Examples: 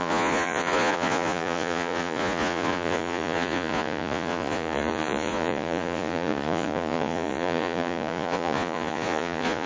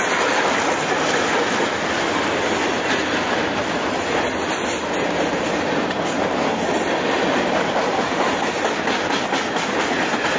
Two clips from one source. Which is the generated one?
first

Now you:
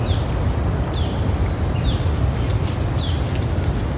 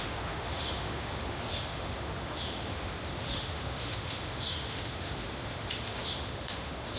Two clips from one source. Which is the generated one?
second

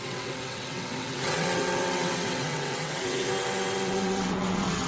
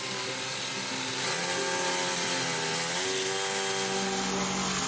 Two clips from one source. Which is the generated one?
first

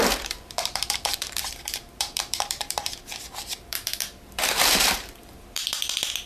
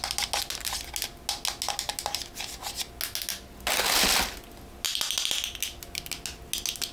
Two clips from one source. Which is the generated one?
first